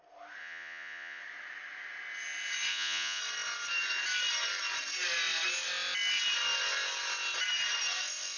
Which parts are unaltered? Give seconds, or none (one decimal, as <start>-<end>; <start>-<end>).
0.0-0.4; 1.2-2.7; 3.2-8.4